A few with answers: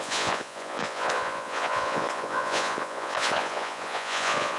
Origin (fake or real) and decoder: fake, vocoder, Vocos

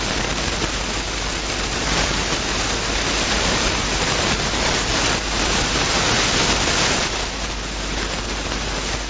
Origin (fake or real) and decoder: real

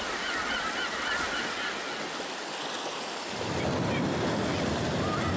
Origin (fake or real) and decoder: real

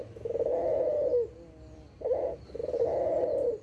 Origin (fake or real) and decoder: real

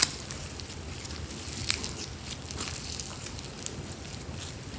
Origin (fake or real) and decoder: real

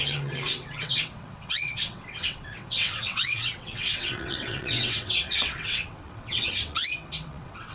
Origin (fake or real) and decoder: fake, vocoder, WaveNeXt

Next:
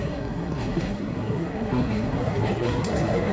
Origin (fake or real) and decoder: fake, codec, SNAC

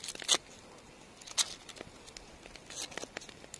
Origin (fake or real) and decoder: real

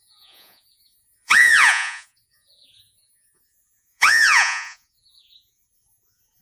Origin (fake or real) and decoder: fake, vocoder, Vocos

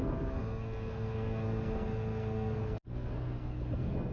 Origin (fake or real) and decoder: fake, codec, SNAC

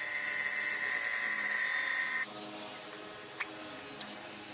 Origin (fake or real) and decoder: real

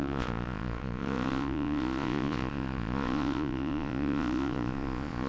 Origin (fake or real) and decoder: fake, vocoder, Vocos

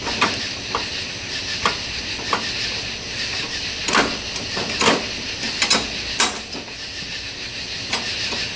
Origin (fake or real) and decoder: real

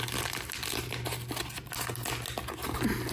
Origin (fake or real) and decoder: real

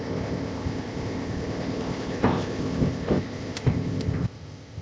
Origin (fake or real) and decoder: fake, codec, ZipCodec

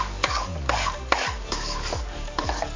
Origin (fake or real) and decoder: fake, codec, DAC